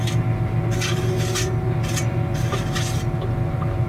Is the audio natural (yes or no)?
yes